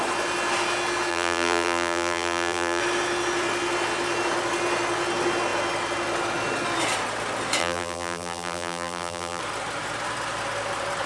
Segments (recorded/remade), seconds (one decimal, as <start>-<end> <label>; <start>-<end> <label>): 0.0-1.1 recorded; 1.1-2.8 remade; 2.8-7.6 recorded; 7.6-9.4 remade; 9.4-11.1 recorded